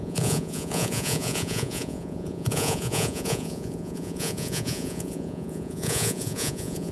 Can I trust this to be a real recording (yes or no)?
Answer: no